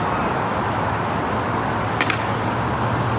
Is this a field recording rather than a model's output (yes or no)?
yes